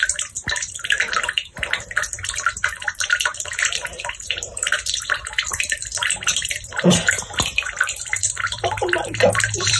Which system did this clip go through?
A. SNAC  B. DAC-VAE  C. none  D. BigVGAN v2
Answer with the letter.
D